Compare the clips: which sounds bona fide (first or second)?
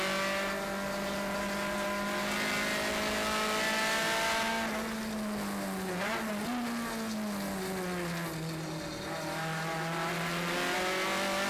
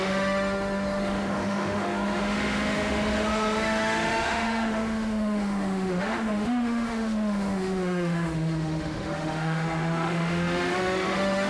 first